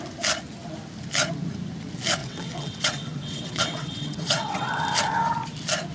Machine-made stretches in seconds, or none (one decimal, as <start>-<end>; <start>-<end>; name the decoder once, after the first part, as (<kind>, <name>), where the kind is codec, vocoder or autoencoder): 2.2-4.7 (vocoder, WaveNeXt)